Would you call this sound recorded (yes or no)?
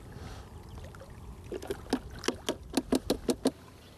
yes